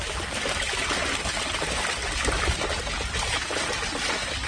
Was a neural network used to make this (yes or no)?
no